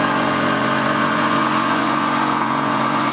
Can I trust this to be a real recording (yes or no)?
no